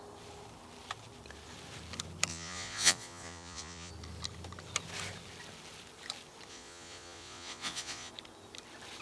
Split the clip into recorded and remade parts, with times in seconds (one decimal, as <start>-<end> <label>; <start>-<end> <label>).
0.0-2.3 recorded; 2.3-3.9 remade; 3.9-6.5 recorded; 6.5-8.1 remade; 8.1-9.0 recorded